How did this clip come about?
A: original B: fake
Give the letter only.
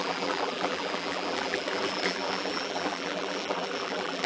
B